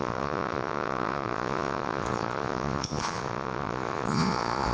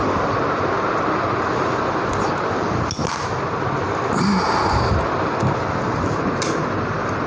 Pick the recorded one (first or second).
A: second